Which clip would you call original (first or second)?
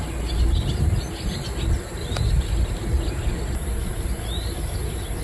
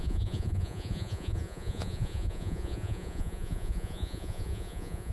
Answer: first